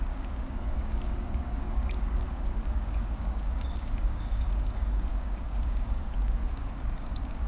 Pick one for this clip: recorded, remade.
remade